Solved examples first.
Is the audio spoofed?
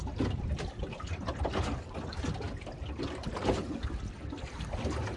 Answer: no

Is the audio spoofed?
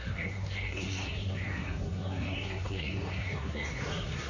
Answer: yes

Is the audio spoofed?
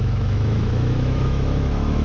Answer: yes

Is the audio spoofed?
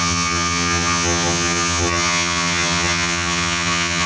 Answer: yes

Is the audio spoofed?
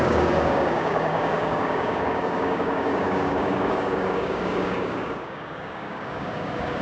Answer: yes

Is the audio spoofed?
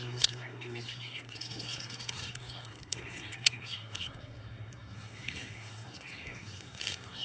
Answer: yes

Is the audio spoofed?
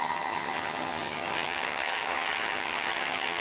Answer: yes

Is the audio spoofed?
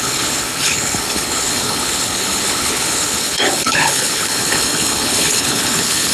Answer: yes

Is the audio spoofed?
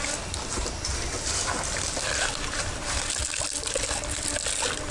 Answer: no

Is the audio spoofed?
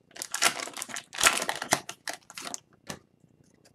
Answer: no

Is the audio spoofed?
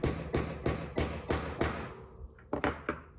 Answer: no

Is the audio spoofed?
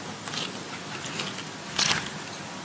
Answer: no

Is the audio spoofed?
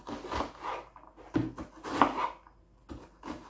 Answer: no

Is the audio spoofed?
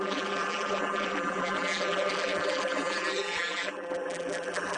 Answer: yes